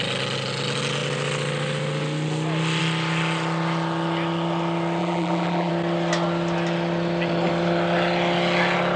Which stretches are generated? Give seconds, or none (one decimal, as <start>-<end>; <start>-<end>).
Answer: 5.0-5.7